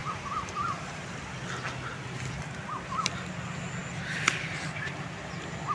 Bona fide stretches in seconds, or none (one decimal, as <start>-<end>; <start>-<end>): 1.0-5.7